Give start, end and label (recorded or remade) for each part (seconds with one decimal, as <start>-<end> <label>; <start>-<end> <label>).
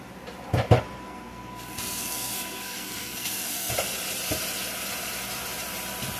0.0-1.0 recorded; 1.0-3.7 remade; 3.7-6.2 recorded